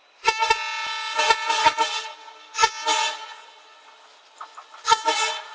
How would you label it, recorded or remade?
recorded